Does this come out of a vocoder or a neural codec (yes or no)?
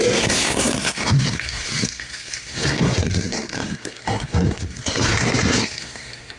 yes